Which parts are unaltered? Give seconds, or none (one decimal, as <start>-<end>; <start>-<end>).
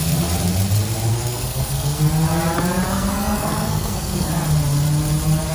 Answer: 0.0-1.1; 2.0-2.9; 4.3-5.5